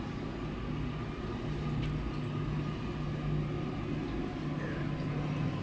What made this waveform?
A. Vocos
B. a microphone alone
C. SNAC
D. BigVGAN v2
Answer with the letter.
B